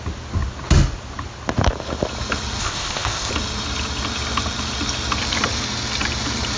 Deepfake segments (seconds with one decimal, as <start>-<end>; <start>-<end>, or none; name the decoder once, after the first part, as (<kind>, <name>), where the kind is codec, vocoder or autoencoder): 2.6-3.3 (codec, ZipCodec)